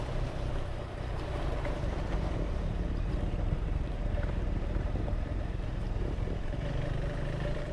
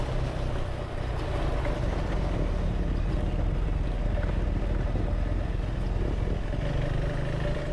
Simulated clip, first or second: first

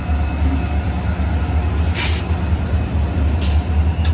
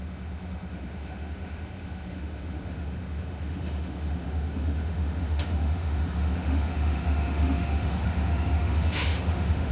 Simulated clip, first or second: second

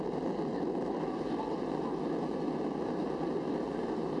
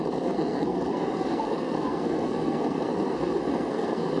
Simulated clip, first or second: second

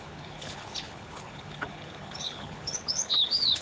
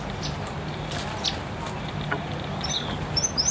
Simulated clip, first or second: first